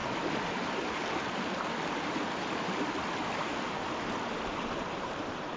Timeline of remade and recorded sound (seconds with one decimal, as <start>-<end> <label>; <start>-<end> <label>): 0.0-5.6 recorded